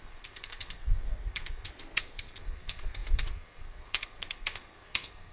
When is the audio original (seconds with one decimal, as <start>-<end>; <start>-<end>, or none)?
none